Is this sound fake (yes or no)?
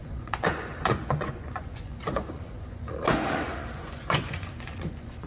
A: yes